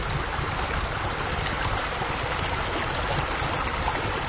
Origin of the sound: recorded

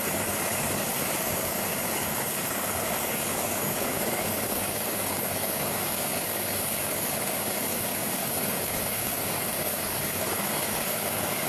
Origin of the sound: remade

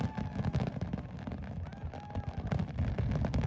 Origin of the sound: recorded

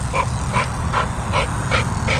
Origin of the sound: recorded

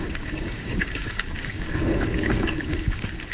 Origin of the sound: remade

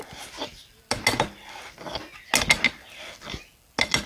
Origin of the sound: recorded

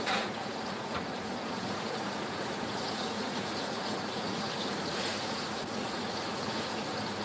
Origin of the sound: remade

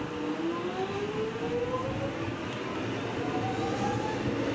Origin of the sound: recorded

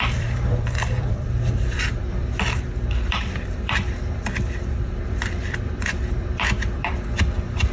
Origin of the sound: remade